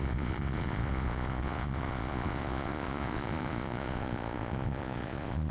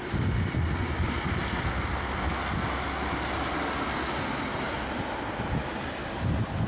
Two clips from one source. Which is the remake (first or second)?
first